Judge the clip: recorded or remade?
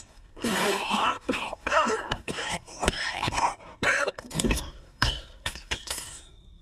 remade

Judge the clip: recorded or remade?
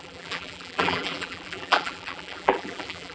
remade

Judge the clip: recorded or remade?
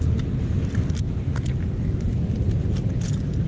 recorded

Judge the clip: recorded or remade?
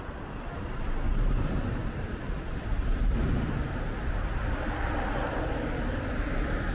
recorded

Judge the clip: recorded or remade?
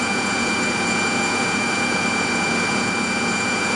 remade